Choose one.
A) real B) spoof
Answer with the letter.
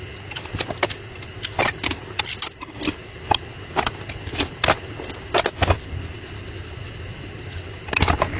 A